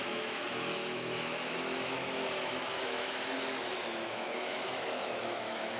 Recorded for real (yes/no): no